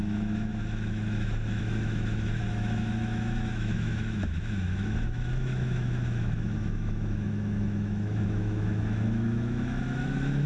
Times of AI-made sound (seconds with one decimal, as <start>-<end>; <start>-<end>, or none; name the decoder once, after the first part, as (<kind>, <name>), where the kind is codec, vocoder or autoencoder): 0.0-10.5 (autoencoder, DAC-VAE)